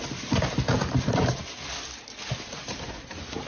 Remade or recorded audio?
recorded